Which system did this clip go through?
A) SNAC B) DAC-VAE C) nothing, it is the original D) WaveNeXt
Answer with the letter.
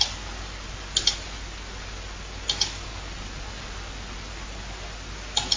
C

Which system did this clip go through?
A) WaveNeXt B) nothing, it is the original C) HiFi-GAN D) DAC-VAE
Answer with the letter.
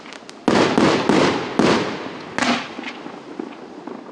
B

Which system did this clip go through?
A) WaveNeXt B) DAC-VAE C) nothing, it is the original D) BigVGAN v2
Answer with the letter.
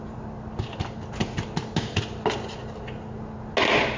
C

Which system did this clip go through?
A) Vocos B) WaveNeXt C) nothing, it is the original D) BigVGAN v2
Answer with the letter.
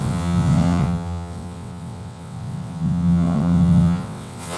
B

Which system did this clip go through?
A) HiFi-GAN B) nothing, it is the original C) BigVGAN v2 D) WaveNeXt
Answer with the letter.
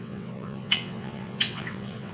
D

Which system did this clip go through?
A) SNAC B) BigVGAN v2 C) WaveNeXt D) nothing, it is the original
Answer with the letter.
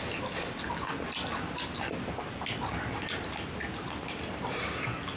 D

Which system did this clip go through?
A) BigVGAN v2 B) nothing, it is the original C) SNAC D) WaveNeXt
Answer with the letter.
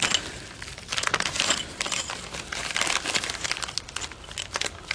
B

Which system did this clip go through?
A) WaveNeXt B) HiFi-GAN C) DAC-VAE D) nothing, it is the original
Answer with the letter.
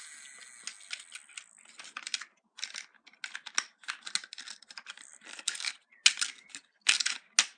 D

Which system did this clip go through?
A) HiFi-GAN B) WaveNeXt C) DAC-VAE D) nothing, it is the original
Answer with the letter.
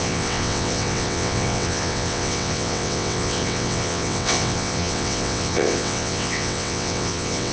B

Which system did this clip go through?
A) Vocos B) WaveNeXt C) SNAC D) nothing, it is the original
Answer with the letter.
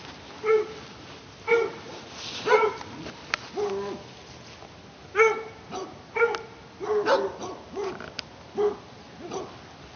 D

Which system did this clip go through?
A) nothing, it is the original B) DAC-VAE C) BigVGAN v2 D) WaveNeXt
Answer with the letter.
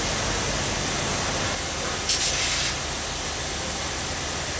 A